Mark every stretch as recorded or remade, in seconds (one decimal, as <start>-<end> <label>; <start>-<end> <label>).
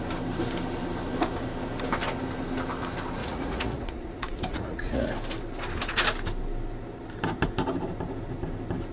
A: 0.0-3.2 recorded; 3.2-5.1 remade; 5.1-8.9 recorded